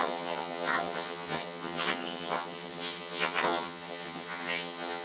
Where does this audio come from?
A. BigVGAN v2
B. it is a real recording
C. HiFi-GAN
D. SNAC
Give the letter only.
C